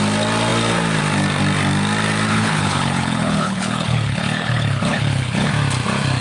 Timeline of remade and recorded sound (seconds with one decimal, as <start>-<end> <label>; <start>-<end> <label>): 0.0-2.3 recorded; 2.3-5.5 remade; 5.5-6.2 recorded